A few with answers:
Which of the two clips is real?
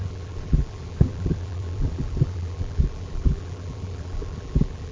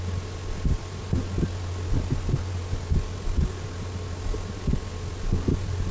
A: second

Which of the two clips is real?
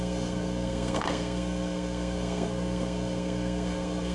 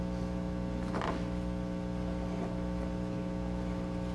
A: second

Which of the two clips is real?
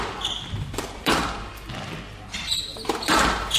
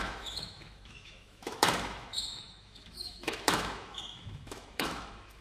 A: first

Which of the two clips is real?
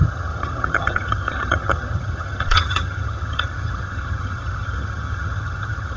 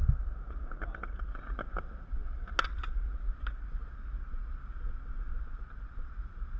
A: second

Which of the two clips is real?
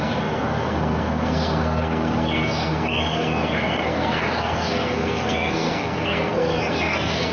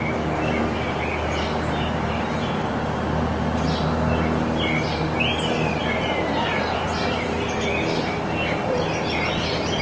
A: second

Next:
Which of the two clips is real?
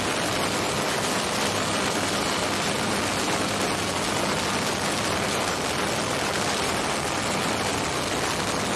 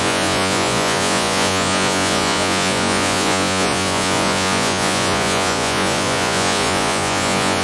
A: first